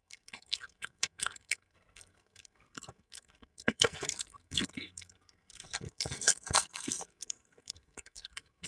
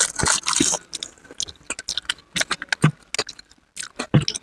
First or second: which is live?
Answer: second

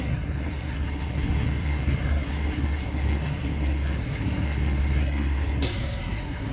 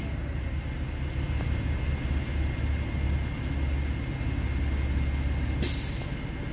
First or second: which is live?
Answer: second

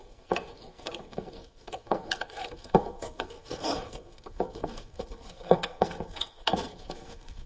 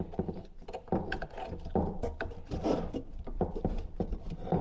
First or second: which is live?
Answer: second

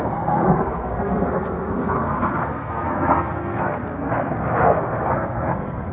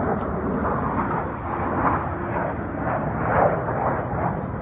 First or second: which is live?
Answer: second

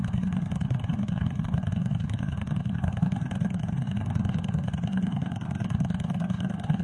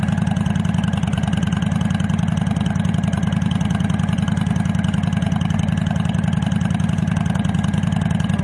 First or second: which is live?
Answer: second